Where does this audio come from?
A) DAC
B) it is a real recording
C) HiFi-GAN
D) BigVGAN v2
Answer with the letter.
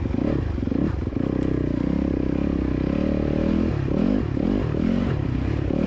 B